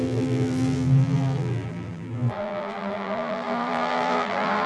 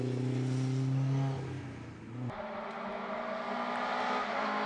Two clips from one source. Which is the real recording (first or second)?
second